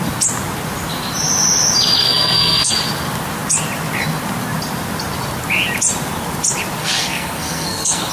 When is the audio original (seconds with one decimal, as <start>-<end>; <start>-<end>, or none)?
0.0-2.0; 2.7-6.8